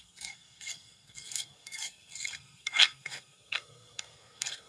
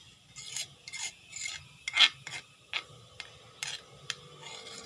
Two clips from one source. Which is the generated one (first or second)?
first